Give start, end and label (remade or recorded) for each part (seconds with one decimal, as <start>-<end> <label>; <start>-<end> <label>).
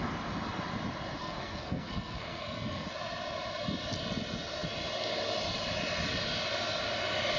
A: 0.0-1.2 recorded; 1.2-2.9 remade; 2.9-7.4 recorded